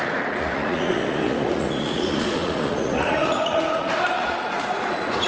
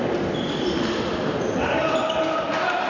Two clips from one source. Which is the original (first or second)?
second